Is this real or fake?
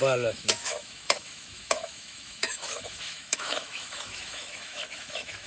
fake